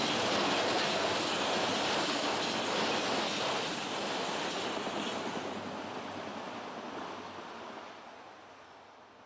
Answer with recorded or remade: recorded